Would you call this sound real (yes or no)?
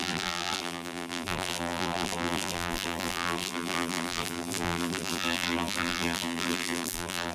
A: no